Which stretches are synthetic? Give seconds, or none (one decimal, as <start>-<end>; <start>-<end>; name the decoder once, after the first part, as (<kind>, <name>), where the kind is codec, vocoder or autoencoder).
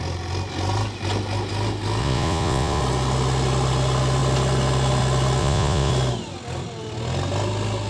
2.0-2.8 (vocoder, Vocos); 5.4-5.9